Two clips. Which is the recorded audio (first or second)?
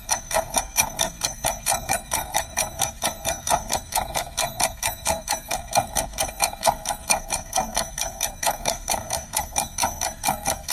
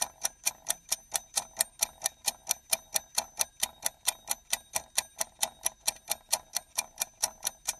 second